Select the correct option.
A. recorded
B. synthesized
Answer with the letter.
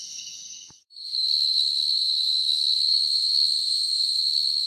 B